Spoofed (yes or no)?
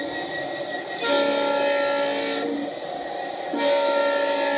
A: no